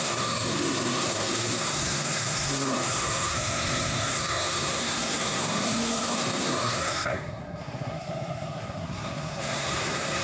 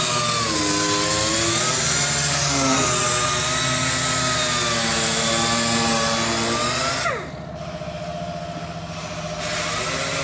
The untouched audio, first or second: second